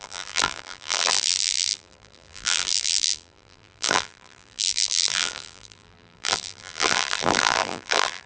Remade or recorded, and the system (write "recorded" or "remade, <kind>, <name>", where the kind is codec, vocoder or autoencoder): remade, vocoder, BigVGAN v2